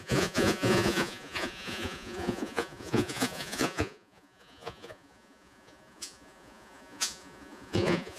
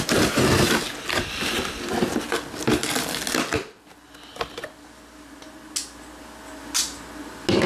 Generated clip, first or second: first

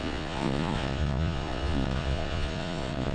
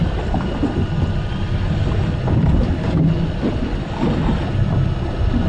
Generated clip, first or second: first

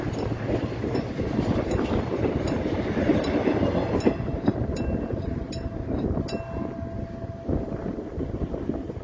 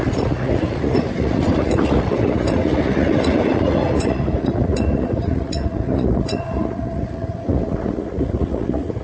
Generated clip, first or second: second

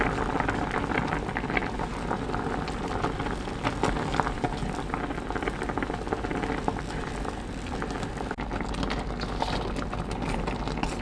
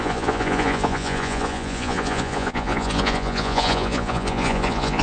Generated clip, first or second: second